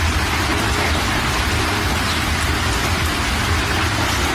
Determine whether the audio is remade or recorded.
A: recorded